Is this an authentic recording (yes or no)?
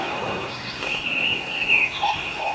no